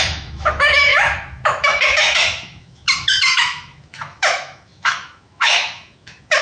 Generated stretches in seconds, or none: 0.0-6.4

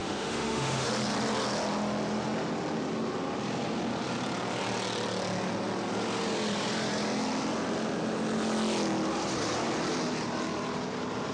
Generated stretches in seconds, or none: 0.0-0.9

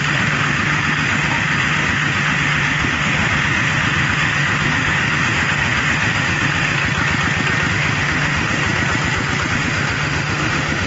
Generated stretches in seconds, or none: 0.0-6.8; 7.7-8.6; 9.5-10.9

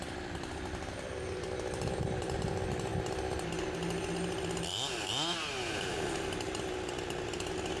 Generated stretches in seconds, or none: none

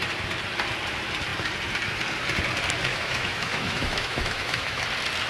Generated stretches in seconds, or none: 2.9-4.8

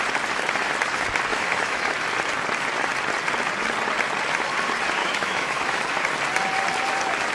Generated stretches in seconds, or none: 1.3-1.9; 5.0-5.8

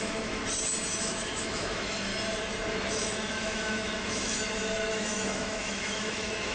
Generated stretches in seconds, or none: 0.0-0.4; 1.0-2.1; 2.9-4.4; 4.9-6.5